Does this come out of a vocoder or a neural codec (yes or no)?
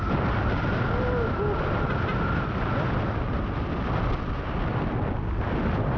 no